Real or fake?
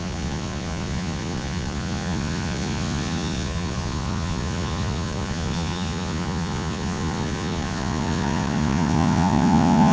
fake